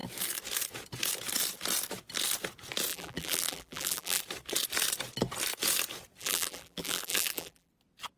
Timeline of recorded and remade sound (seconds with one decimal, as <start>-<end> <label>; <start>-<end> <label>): 0.0-2.9 recorded; 2.9-4.2 remade; 4.2-6.2 recorded; 6.2-7.7 remade; 7.7-8.2 recorded